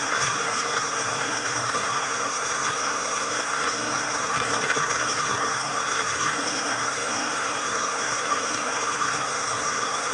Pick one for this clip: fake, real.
fake